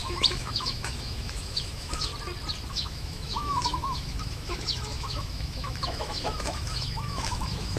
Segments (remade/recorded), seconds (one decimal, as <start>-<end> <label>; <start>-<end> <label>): 0.0-2.1 remade; 2.1-2.7 recorded; 2.7-7.8 remade